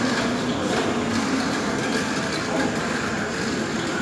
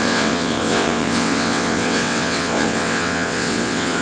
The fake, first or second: second